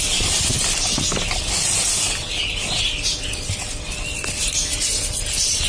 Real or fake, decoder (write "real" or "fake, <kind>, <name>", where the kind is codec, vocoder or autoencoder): real